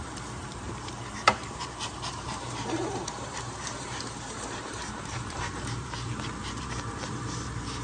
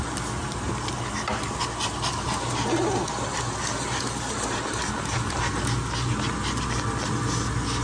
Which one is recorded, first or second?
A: second